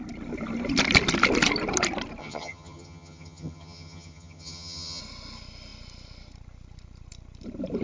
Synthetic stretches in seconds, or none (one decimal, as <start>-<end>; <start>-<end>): 2.2-5.0